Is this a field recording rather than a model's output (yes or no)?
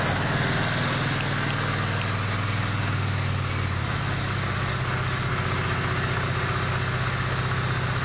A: yes